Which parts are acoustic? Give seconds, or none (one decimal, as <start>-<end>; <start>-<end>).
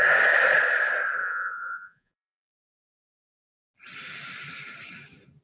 0.0-1.2; 3.2-5.4